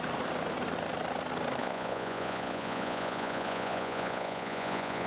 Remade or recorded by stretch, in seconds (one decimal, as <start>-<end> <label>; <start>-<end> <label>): 0.0-1.6 recorded; 1.6-5.1 remade